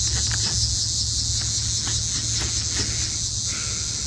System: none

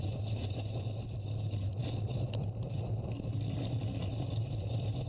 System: vocoder, BigVGAN v2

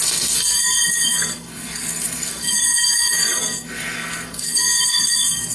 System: codec, SNAC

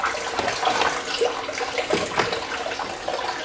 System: none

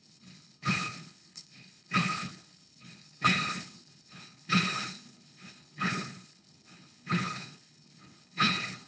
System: codec, HILCodec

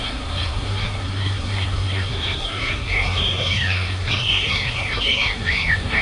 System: codec, SNAC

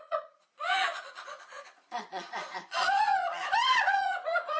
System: vocoder, Vocos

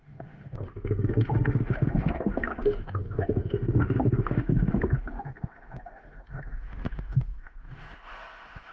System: autoencoder, DAC-VAE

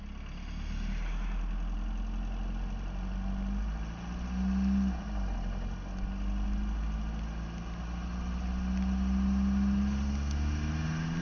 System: none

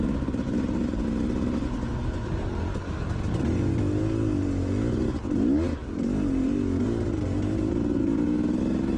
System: none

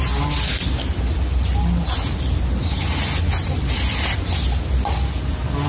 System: none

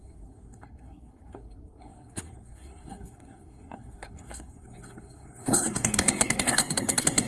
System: codec, SNAC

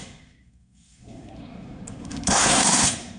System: codec, SNAC